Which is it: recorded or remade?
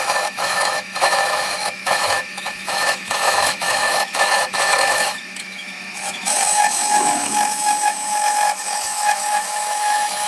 remade